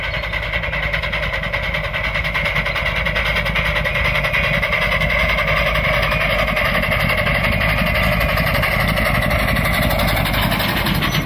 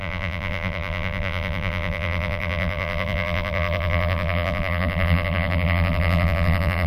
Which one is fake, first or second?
second